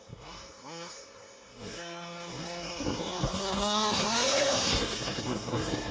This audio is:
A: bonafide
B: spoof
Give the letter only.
B